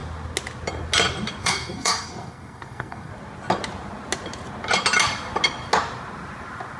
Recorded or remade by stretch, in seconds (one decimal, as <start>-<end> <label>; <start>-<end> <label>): 0.0-1.4 recorded; 1.4-3.1 remade; 3.1-6.8 recorded